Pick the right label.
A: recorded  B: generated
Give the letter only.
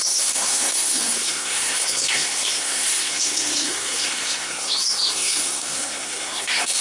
B